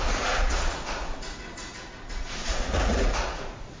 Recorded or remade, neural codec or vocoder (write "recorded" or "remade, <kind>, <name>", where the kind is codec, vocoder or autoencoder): remade, vocoder, Vocos